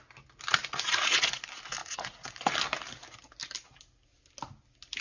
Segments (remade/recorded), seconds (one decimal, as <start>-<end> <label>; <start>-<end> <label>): 0.0-0.6 recorded; 0.6-1.4 remade; 1.4-1.8 recorded; 1.8-2.5 remade; 2.5-5.0 recorded